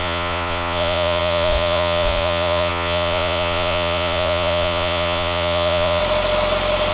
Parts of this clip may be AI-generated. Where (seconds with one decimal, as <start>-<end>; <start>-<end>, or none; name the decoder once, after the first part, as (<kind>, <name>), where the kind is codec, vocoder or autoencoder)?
0.0-6.0 (vocoder, Vocos)

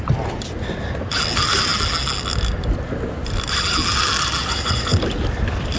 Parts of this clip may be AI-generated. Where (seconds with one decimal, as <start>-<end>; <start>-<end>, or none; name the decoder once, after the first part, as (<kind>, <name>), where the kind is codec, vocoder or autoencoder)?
4.4-5.0 (vocoder, Vocos)

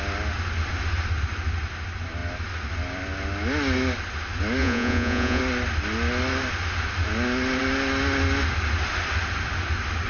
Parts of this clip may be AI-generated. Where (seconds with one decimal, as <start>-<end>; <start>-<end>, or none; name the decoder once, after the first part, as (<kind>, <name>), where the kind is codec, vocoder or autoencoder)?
4.6-5.4 (vocoder, Vocos)

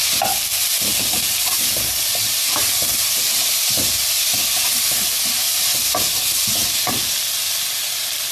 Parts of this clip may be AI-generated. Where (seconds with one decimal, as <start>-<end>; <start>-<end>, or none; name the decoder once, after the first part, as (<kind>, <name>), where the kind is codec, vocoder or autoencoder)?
none

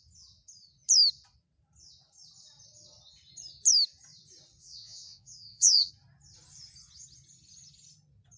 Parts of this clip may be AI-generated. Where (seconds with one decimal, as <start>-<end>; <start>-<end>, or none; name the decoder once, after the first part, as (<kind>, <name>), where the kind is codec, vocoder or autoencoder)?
4.6-5.9 (vocoder, Vocos)

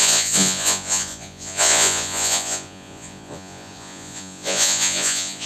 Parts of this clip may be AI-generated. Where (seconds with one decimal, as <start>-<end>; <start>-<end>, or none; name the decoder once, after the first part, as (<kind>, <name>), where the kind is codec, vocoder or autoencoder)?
0.0-5.5 (vocoder, Vocos)